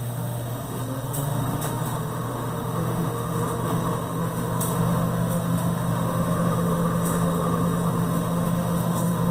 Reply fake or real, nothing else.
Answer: fake